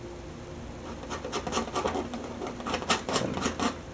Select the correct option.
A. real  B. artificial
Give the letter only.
A